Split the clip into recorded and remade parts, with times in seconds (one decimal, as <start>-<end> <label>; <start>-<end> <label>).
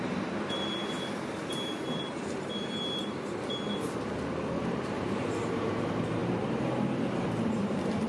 0.0-0.8 remade; 0.8-1.3 recorded; 1.3-8.1 remade